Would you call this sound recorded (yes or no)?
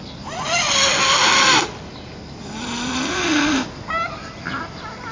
yes